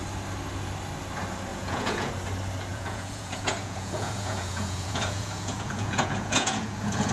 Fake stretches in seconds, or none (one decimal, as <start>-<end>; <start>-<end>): 1.5-2.1; 2.7-7.1